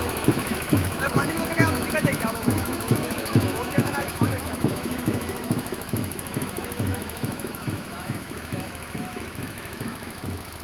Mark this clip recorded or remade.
remade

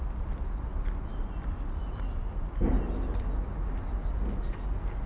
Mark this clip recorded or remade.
recorded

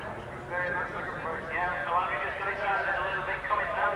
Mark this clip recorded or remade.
recorded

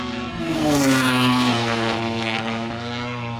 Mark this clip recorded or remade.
remade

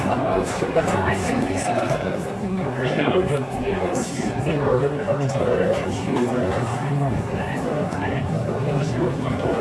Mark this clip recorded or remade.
remade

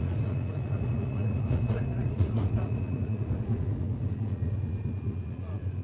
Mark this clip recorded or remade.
remade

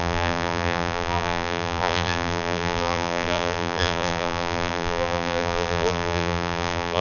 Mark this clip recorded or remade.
remade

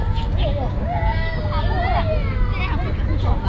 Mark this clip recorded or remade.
recorded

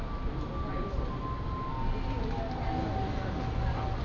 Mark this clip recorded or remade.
recorded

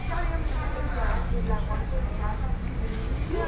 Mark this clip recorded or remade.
recorded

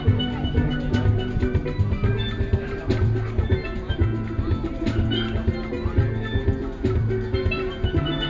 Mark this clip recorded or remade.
recorded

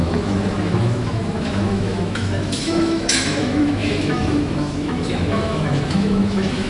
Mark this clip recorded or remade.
remade